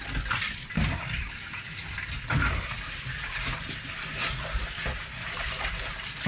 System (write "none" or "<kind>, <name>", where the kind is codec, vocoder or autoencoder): none